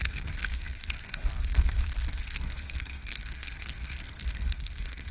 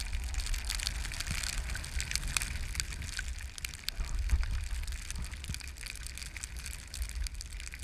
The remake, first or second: first